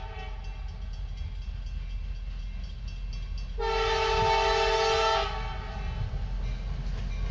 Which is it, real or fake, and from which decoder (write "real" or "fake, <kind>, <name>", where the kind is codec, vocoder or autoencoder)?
real